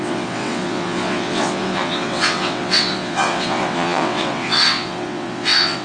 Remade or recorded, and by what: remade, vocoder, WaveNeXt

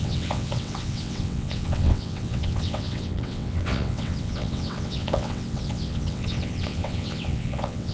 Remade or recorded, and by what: remade, vocoder, WaveNeXt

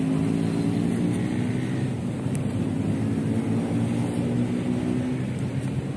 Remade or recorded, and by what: recorded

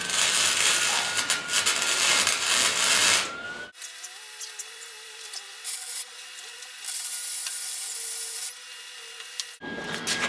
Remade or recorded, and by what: recorded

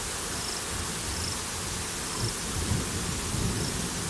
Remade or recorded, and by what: recorded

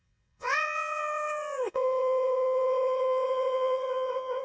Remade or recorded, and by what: remade, vocoder, WaveNeXt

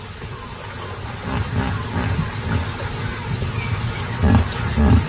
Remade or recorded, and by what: recorded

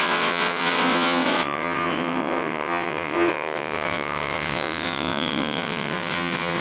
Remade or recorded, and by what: remade, vocoder, WaveNeXt